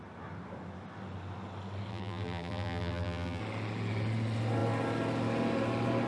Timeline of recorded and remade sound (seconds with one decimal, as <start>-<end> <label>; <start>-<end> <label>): 0.0-1.9 recorded; 1.9-3.4 remade; 3.4-6.1 recorded